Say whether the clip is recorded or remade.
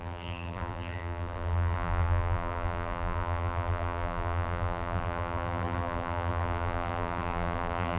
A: remade